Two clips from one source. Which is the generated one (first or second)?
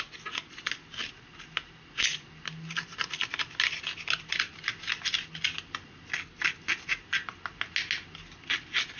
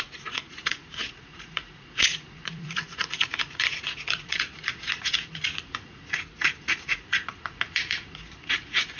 second